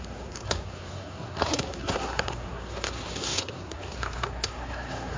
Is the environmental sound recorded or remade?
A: remade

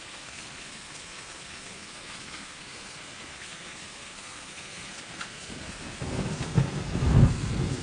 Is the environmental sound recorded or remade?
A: remade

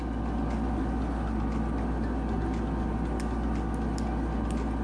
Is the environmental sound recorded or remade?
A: recorded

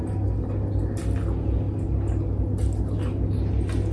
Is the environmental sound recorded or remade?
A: recorded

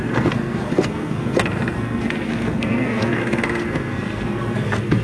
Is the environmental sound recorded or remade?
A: remade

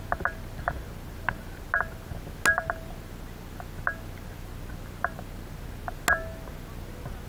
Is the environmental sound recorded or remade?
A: recorded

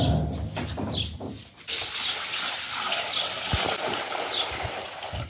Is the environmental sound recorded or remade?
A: recorded